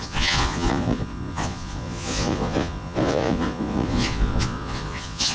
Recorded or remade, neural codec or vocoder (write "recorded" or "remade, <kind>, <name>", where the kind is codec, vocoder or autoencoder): remade, vocoder, Vocos